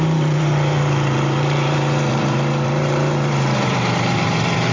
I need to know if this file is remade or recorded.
remade